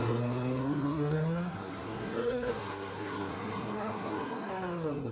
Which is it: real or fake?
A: fake